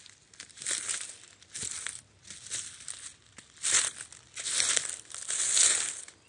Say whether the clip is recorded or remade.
recorded